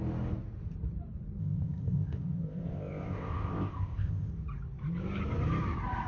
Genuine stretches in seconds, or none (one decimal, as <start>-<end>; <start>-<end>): 0.0-1.4; 4.3-6.1